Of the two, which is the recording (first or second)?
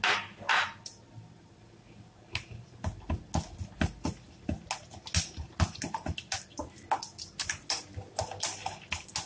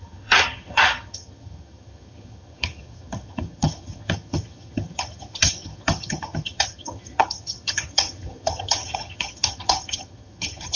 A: first